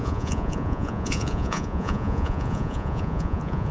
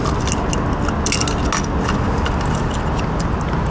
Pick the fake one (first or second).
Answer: first